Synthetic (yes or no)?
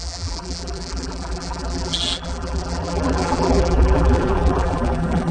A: yes